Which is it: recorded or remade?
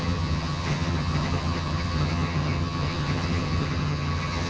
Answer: remade